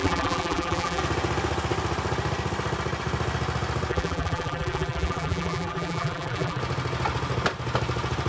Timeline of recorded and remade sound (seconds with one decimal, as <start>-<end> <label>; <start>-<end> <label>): 0.0-1.0 remade; 1.0-3.9 recorded; 3.9-6.6 remade; 6.6-8.3 recorded